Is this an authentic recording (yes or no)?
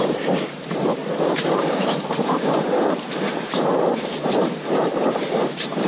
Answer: no